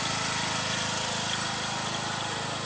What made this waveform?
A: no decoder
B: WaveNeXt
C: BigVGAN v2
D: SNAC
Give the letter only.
A